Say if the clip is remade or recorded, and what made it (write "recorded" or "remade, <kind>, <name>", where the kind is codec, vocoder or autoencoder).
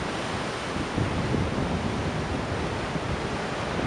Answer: recorded